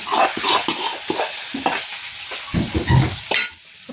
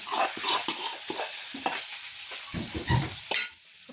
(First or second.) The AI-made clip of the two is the second